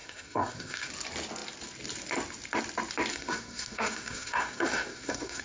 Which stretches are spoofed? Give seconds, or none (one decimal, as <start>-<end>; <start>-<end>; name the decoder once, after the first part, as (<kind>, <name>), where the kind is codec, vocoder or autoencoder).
0.0-0.9 (codec, SNAC); 3.1-5.4